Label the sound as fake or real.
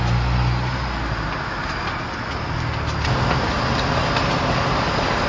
real